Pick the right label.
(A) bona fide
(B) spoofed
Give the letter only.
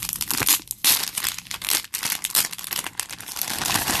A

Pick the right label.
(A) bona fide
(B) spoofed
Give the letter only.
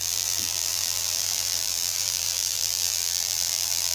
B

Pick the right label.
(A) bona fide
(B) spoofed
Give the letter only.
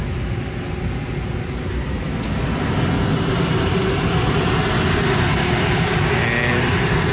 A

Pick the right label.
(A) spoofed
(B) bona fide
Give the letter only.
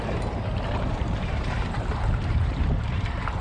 A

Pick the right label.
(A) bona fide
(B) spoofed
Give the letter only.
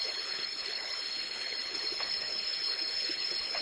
B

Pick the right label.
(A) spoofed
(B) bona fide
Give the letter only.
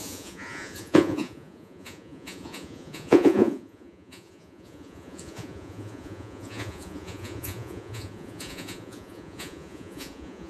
A